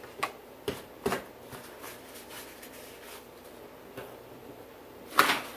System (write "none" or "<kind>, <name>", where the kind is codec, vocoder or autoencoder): none